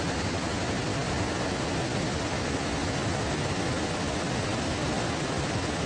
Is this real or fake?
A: real